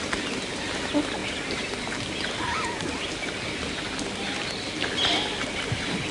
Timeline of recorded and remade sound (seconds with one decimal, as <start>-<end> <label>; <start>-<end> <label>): 0.0-6.1 recorded